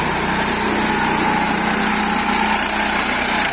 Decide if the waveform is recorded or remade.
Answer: recorded